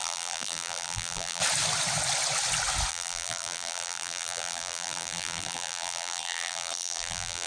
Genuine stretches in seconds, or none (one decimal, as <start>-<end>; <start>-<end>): 1.4-2.9